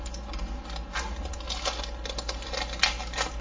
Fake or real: real